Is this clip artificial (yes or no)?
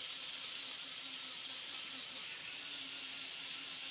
no